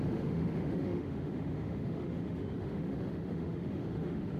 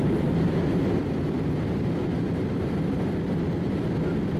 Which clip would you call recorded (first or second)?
second